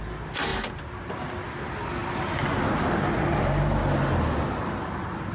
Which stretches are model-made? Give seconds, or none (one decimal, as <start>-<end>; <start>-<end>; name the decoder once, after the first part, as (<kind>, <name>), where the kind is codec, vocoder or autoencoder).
none